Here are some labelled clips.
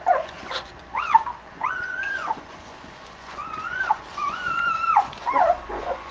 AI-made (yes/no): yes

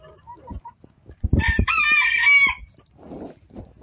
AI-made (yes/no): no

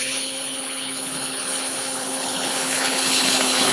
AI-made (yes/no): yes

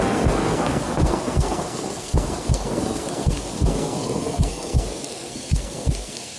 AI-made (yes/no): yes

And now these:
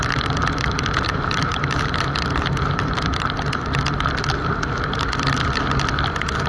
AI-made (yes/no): no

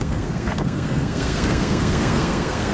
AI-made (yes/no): yes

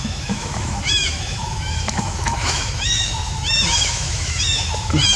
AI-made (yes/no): yes